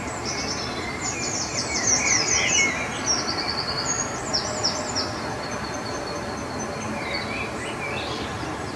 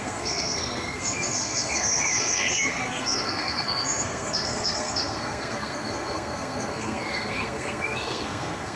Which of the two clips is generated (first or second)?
second